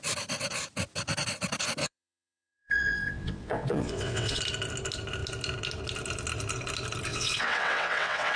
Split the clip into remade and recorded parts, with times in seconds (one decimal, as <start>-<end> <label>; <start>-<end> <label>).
0.0-1.8 recorded; 1.8-4.4 remade; 4.4-7.1 recorded; 7.1-8.4 remade